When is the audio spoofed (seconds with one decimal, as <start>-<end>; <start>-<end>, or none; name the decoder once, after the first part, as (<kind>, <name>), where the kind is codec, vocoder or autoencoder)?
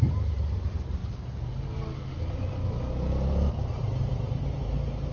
0.0-1.0 (vocoder, BigVGAN v2); 3.5-5.1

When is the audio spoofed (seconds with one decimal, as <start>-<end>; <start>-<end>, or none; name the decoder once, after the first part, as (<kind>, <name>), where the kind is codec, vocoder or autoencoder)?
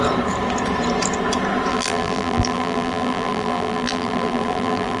1.7-5.0 (vocoder, BigVGAN v2)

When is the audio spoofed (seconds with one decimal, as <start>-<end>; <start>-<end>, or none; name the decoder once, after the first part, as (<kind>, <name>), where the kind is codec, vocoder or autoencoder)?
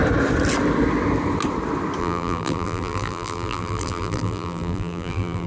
2.0-5.5 (vocoder, BigVGAN v2)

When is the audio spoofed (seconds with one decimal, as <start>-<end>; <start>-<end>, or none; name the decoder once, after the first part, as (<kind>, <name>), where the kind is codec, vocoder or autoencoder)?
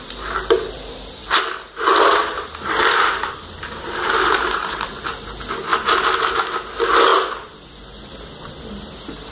2.2-4.9 (vocoder, BigVGAN v2); 5.7-6.6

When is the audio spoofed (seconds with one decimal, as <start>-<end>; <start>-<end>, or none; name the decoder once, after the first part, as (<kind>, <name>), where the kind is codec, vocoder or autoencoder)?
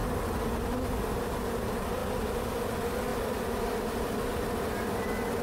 2.0-2.7 (vocoder, BigVGAN v2); 3.1-4.6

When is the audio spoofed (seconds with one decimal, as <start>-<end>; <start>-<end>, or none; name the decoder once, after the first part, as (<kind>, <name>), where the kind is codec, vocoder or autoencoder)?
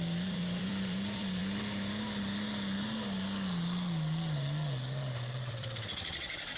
0.0-1.4 (vocoder, BigVGAN v2); 5.4-6.6